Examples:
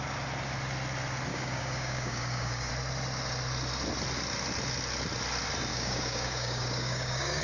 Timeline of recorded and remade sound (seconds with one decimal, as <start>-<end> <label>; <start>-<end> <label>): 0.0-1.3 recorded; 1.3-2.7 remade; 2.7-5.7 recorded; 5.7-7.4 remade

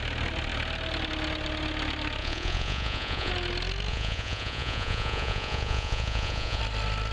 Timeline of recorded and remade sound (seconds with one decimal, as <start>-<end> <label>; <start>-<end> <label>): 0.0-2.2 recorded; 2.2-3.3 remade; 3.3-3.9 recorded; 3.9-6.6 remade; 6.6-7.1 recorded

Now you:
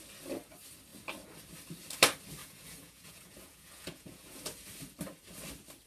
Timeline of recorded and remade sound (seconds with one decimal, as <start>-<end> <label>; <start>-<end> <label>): 0.0-2.4 recorded; 2.4-4.4 remade; 4.4-5.9 recorded

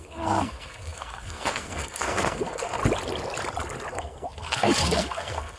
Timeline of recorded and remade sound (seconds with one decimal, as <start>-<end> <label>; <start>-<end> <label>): 0.0-2.8 remade; 2.8-3.9 recorded; 3.9-5.6 remade

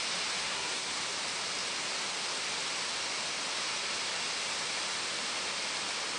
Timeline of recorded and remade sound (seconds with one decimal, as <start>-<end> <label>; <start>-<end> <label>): 0.0-0.4 recorded; 0.4-0.9 remade; 0.9-6.2 recorded

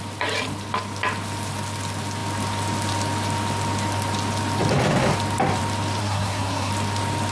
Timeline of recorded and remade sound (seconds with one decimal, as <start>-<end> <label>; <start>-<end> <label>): 0.0-6.0 recorded; 6.0-6.7 remade; 6.7-7.3 recorded

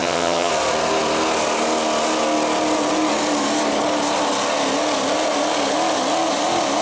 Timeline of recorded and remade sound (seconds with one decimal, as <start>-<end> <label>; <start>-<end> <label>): 0.0-0.5 remade; 0.5-6.8 recorded